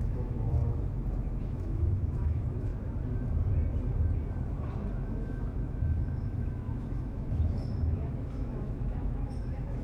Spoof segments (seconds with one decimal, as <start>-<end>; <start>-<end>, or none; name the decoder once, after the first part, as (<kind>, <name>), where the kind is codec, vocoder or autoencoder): 0.0-0.6 (autoencoder, DAC-VAE); 1.4-2.7; 4.9-9.8